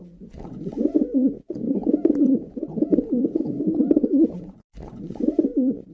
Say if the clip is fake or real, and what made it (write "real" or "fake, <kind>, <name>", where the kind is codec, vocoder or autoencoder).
fake, vocoder, Vocos